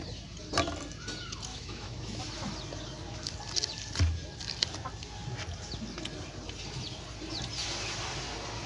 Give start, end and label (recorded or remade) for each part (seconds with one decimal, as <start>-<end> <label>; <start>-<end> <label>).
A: 0.0-1.5 recorded; 1.5-2.2 remade; 2.2-8.7 recorded